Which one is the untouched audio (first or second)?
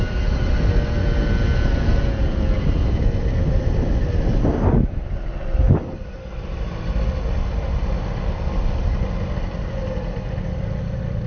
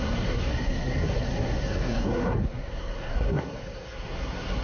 first